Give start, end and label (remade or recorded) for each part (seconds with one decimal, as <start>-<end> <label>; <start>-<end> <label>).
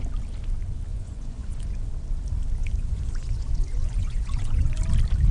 0.0-0.9 recorded; 0.9-1.9 remade; 1.9-2.6 recorded; 2.6-4.8 remade; 4.8-5.3 recorded